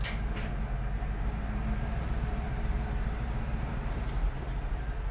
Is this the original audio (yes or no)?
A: no